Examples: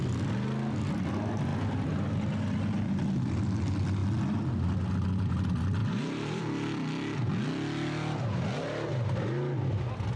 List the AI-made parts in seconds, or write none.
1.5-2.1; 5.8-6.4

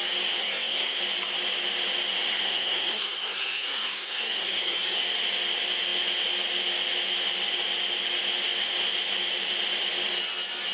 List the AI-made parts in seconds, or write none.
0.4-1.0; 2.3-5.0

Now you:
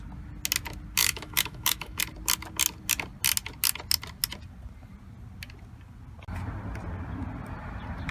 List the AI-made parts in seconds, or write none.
1.0-2.0

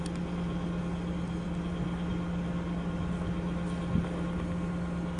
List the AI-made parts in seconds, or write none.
none

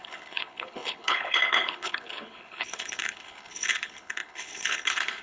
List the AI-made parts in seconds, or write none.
0.0-5.2

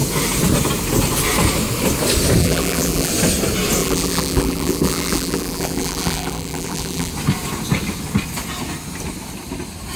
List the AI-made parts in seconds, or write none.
2.4-3.1; 3.8-7.1

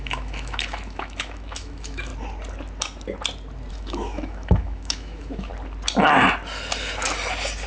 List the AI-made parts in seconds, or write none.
0.0-2.1; 3.7-5.5